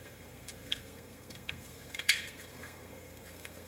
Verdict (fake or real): fake